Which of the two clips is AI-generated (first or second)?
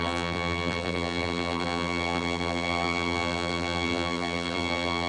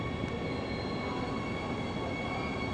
first